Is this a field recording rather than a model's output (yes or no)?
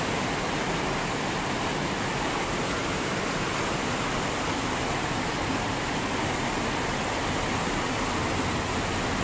yes